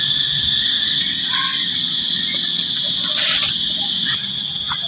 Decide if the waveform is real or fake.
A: real